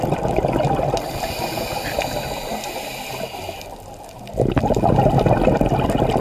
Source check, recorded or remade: recorded